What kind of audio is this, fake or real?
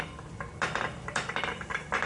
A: fake